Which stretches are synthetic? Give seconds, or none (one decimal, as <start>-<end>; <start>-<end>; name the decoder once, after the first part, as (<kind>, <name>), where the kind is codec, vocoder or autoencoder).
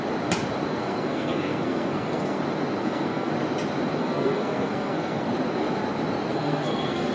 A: 0.7-2.4 (codec, SNAC); 2.8-3.3; 4.0-5.3; 6.3-7.1